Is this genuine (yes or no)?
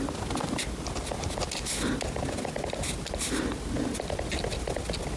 yes